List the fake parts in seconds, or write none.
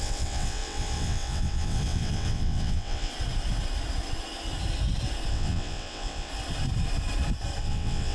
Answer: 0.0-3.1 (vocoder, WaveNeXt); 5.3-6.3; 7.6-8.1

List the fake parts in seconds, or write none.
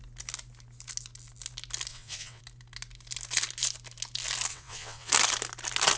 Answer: 1.9-2.4 (vocoder, WaveNeXt); 4.5-5.1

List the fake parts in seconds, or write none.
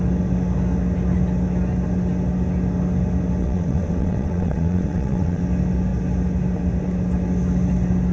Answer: 3.4-5.4 (vocoder, WaveNeXt)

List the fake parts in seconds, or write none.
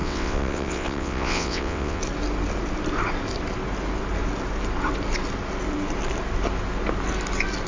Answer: 0.0-2.0 (vocoder, WaveNeXt)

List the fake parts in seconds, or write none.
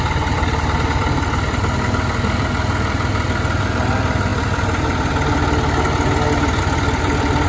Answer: none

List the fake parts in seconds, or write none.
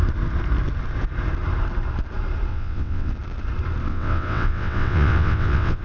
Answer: 2.5-3.1 (vocoder, WaveNeXt); 3.9-5.8